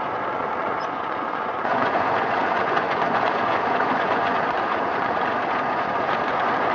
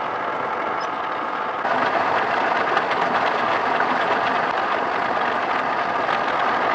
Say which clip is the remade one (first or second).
first